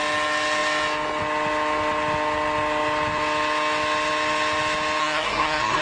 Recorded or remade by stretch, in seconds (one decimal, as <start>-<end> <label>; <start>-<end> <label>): 0.0-5.0 recorded; 5.0-5.8 remade